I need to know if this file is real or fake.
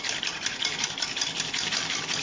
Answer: real